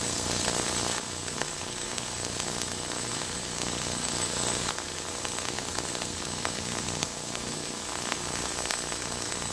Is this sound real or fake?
fake